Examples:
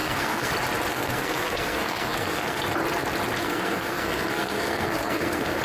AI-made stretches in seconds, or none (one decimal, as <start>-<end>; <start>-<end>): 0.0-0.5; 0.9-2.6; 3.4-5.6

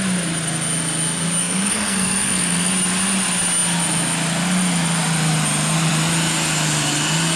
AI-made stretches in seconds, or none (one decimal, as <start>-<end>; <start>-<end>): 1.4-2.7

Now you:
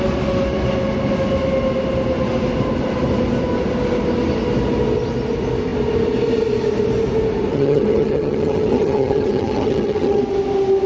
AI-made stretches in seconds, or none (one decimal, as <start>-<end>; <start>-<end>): 7.5-10.2

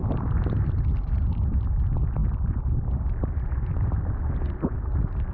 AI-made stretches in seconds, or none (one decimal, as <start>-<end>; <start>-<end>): none

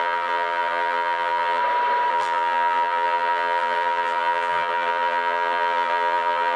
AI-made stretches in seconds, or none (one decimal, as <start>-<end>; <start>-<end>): 0.0-1.6; 2.1-6.6

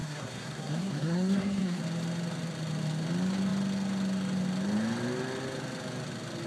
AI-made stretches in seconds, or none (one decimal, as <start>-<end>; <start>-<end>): 0.0-1.8

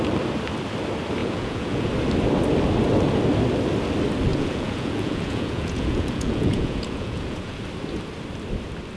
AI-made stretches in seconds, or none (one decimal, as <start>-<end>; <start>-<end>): 1.2-1.9; 4.3-7.6

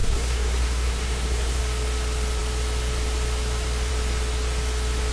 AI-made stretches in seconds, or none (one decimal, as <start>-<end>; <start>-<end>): 0.0-1.6